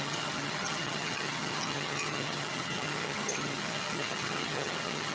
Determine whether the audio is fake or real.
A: fake